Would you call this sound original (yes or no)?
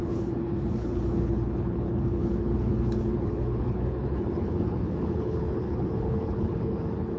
no